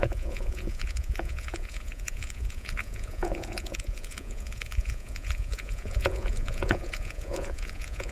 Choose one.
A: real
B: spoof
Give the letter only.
B